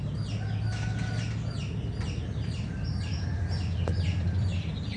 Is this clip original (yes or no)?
yes